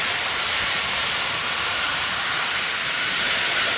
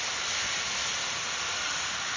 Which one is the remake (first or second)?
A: first